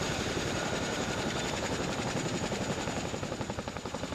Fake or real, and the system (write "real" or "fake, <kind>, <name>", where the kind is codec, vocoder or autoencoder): fake, vocoder, BigVGAN v2